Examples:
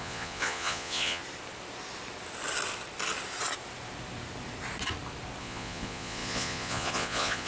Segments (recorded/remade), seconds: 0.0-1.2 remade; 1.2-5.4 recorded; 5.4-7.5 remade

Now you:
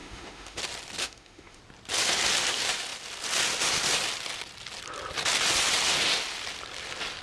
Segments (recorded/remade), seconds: 0.0-0.6 remade; 0.6-1.0 recorded; 1.0-1.6 remade; 1.6-7.2 recorded

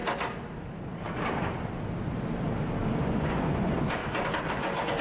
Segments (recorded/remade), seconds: 0.0-3.0 recorded; 3.0-4.0 remade; 4.0-4.5 recorded; 4.5-5.0 remade

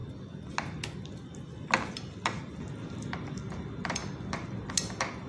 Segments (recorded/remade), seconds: 0.0-5.3 recorded

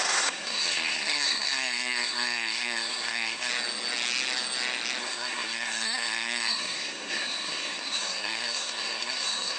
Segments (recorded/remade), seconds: 0.0-3.5 remade; 3.5-5.0 recorded; 5.0-9.6 remade

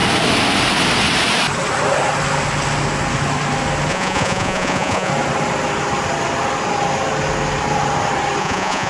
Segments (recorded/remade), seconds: 0.0-3.9 recorded; 3.9-5.1 remade; 5.1-8.4 recorded; 8.4-8.9 remade

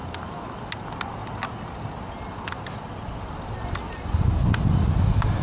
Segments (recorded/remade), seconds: 0.0-5.4 recorded